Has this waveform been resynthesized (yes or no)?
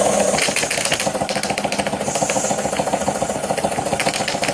no